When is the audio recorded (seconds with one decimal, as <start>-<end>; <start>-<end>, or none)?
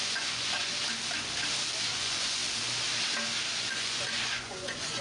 0.7-1.9; 2.4-3.5